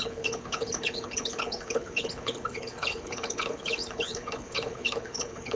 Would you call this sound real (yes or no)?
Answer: no